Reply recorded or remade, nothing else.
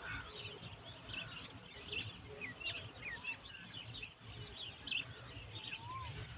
recorded